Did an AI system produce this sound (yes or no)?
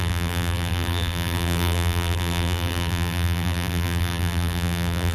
yes